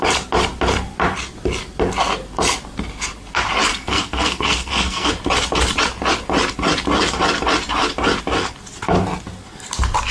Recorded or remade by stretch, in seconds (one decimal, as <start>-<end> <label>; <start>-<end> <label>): 0.0-3.7 recorded; 3.7-5.1 remade; 5.1-10.1 recorded